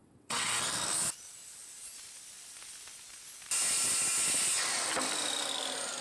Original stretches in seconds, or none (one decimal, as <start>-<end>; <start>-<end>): 0.5-6.0